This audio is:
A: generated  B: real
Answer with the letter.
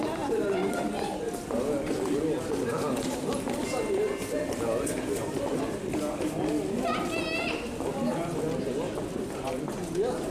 B